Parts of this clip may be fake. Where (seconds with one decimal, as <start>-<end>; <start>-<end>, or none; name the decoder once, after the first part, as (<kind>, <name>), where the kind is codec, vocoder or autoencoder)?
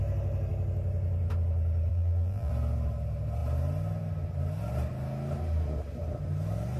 1.9-2.5 (vocoder, BigVGAN v2)